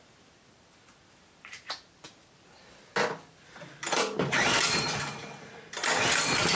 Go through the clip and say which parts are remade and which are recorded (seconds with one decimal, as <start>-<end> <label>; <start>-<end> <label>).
0.0-3.0 recorded; 3.0-6.0 remade; 6.0-6.6 recorded